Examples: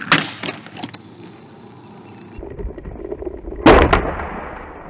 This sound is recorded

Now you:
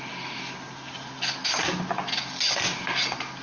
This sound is recorded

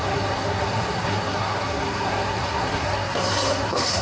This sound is remade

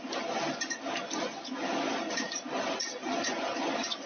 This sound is recorded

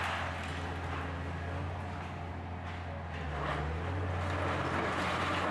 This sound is recorded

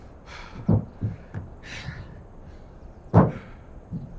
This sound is recorded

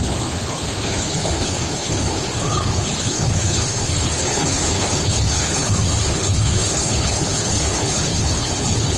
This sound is remade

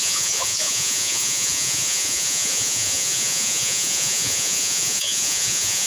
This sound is remade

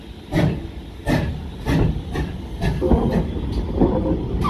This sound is recorded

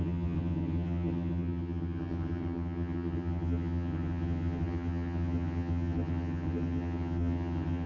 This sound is remade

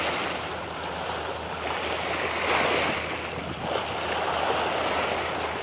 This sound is recorded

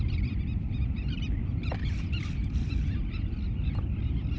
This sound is recorded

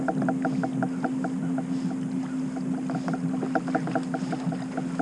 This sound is recorded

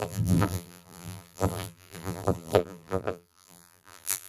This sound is remade